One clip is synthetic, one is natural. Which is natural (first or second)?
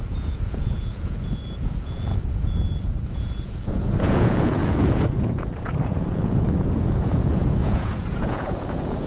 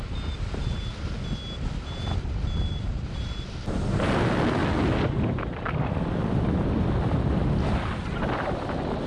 second